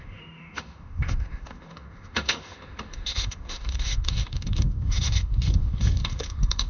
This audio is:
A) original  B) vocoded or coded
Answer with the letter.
B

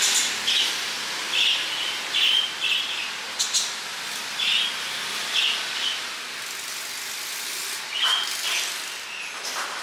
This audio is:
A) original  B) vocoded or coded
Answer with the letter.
A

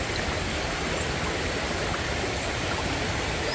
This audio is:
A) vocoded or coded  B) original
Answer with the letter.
B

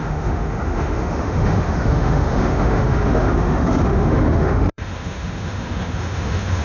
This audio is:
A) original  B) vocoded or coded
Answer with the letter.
B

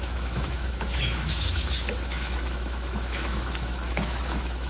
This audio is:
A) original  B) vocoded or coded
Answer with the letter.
B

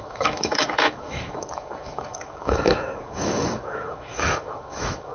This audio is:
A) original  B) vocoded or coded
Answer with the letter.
B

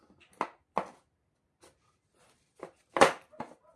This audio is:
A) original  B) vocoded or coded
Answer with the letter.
A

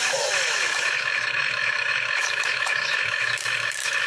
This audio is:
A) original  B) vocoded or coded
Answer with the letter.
B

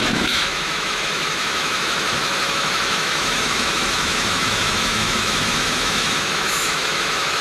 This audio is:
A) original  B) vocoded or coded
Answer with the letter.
B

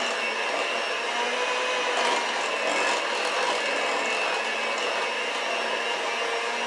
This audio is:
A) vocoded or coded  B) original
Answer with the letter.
B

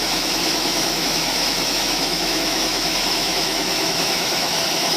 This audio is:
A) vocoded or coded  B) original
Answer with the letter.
A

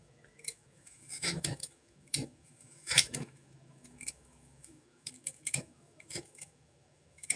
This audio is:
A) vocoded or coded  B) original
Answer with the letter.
A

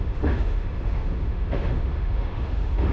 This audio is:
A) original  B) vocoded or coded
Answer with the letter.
B